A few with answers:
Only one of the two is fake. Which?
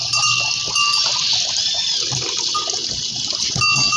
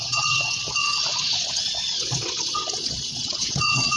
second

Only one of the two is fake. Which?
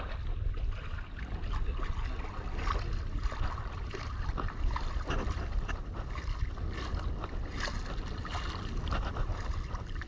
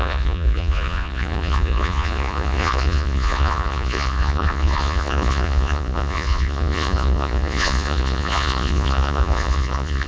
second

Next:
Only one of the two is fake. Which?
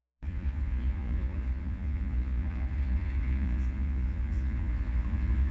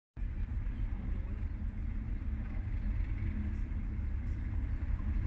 first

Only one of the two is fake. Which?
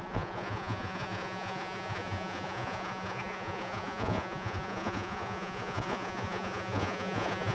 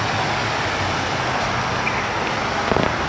first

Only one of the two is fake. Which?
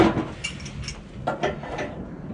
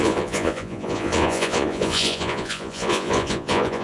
second